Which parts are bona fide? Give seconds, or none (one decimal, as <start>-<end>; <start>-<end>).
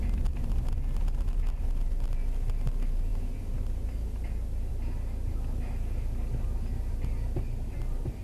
0.0-8.2